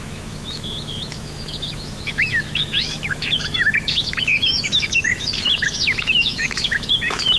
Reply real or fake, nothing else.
fake